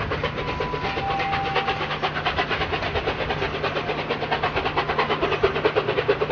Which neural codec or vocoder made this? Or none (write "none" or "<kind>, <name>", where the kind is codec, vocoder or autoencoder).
none